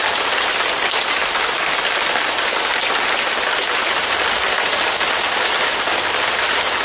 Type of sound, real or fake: real